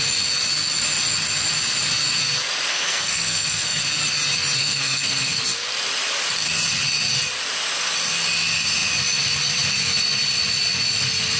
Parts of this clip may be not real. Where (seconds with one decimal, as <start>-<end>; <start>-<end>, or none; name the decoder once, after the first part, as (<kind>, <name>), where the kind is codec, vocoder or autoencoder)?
2.7-3.8 (codec, SNAC); 4.6-5.4